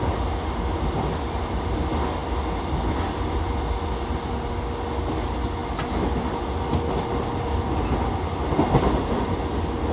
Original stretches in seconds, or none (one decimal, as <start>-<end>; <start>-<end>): 0.0-9.9